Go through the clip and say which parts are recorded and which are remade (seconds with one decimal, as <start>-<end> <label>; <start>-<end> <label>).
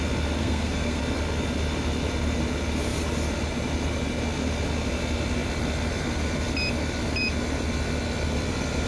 0.0-0.4 recorded; 0.4-1.0 remade; 1.0-8.9 recorded